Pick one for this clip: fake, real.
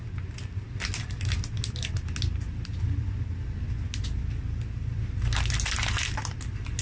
real